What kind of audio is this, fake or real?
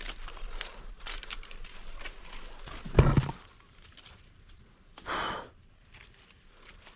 real